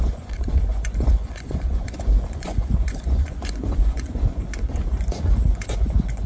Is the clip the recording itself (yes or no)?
no